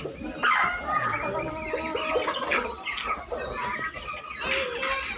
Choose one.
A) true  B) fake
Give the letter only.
A